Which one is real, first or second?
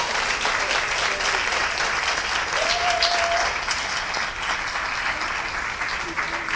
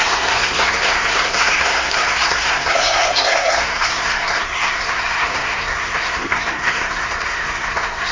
first